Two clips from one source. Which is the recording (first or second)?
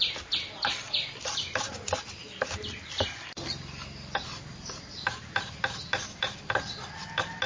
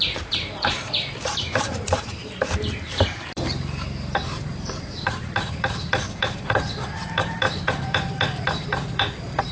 first